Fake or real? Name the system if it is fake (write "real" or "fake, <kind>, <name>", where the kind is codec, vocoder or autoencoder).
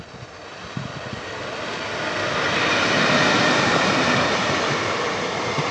real